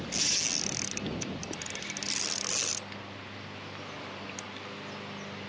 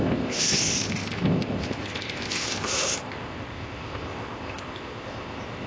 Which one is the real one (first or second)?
first